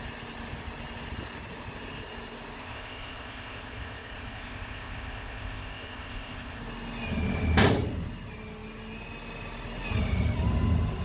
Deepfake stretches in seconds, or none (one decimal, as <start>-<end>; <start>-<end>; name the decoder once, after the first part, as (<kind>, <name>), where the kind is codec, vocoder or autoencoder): 2.6-6.6 (codec, ZipCodec)

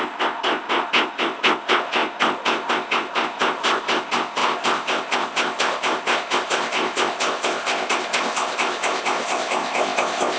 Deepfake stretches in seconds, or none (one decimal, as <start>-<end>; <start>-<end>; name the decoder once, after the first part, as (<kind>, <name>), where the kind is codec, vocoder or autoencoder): 0.0-10.4 (codec, ZipCodec)

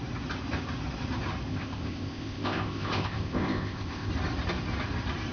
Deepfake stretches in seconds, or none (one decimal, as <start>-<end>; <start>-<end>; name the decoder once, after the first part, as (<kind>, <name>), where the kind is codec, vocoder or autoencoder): 1.5-4.1 (codec, ZipCodec)